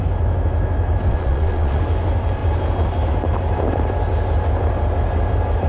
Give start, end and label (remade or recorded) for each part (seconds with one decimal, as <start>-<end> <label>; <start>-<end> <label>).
0.0-1.1 recorded; 1.1-1.8 remade; 1.8-5.7 recorded